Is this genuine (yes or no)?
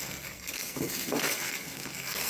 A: no